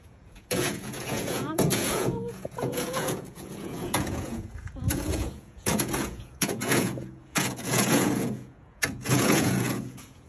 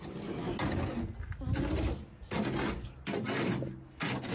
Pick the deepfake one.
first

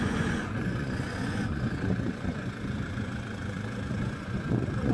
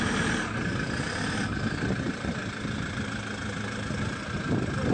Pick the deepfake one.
first